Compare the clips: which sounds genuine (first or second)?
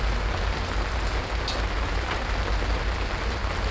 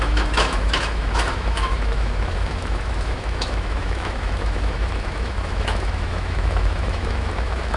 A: first